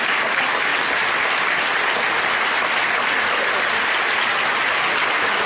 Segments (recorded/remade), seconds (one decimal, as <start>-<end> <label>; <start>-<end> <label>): 0.0-5.5 recorded